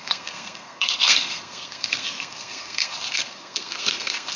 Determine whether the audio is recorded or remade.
remade